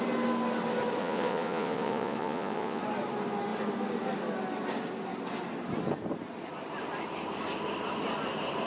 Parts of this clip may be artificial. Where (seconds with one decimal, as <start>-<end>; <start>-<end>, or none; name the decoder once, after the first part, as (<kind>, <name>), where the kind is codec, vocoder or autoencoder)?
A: 1.0-2.8 (vocoder, Vocos)